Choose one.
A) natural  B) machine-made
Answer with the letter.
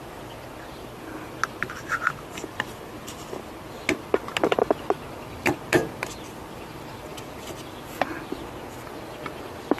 A